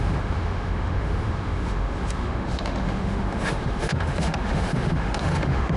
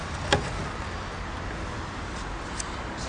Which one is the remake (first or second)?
first